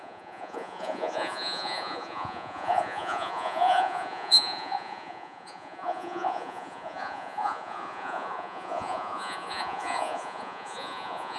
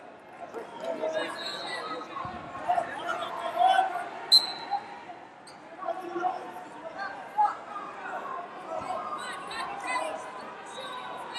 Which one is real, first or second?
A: second